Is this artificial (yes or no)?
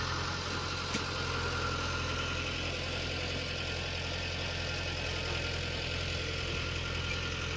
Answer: no